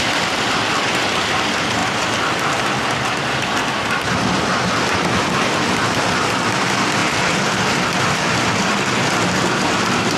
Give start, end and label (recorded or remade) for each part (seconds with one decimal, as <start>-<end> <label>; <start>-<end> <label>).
0.0-10.2 remade